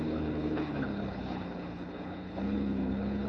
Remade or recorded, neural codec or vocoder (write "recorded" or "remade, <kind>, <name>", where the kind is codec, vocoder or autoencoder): remade, codec, HILCodec